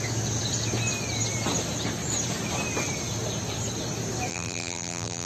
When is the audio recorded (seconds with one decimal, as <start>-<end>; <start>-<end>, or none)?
0.0-4.3